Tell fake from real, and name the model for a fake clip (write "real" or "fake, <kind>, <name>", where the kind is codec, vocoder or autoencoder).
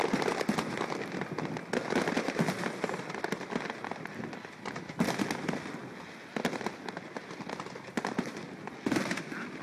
real